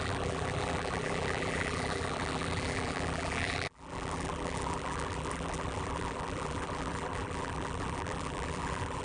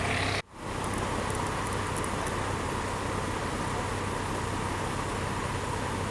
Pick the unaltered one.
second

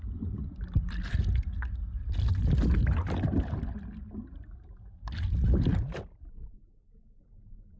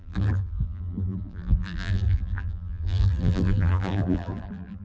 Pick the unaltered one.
first